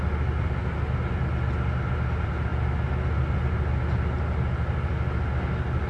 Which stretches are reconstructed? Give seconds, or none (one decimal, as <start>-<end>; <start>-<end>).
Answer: none